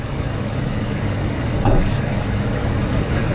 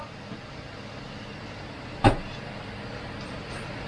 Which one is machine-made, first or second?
first